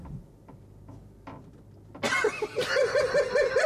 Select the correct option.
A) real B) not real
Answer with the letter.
A